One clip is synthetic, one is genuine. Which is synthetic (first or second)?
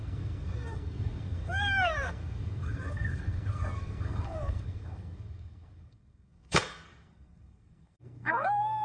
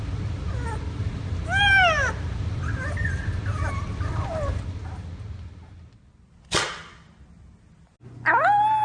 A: first